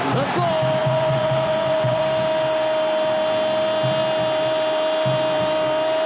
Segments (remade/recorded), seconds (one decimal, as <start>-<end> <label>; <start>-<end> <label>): 0.0-0.8 recorded; 0.8-2.0 remade; 2.0-6.1 recorded